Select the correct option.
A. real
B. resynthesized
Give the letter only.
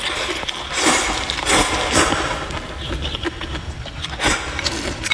A